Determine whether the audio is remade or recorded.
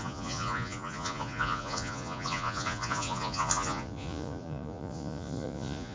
remade